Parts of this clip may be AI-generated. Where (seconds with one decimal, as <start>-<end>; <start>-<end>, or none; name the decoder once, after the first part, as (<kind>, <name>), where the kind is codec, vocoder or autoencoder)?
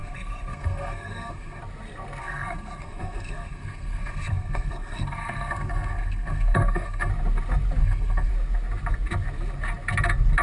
0.0-1.6 (codec, SNAC); 2.2-7.1; 7.8-8.3